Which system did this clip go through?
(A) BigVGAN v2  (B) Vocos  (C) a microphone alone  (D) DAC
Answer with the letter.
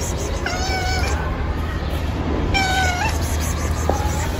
A